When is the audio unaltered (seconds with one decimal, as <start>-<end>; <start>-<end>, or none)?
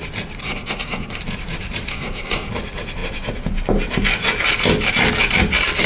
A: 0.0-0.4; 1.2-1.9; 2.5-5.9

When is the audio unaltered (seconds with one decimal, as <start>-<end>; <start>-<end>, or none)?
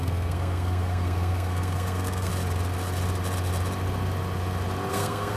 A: 2.3-4.9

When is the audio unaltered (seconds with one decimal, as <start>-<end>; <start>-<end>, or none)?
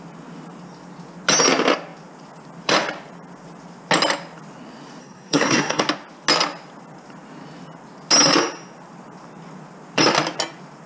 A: 0.0-5.0; 5.8-10.9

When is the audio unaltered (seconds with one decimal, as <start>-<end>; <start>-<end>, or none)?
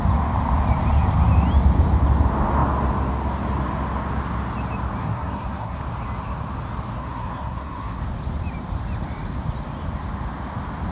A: 0.0-5.0; 5.8-7.0; 8.0-10.9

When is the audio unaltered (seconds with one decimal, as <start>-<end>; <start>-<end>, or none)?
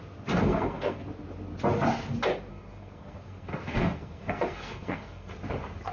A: 0.0-0.4; 1.0-2.5; 5.3-5.9